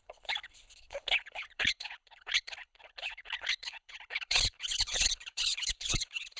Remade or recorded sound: remade